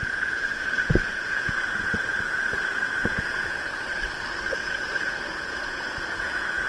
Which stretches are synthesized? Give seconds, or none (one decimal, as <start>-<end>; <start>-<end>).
0.0-3.9; 4.5-6.7